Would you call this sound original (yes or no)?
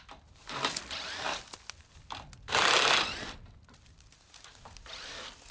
yes